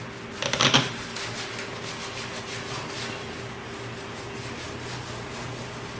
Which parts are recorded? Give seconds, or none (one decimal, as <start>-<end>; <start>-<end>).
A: 0.0-6.0